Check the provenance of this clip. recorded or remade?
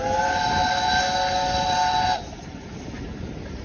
recorded